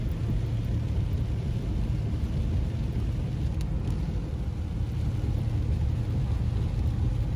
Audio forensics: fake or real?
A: real